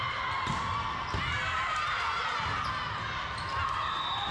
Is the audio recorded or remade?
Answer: recorded